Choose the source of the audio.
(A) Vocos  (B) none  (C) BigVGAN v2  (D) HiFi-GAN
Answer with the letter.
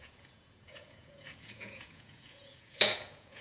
A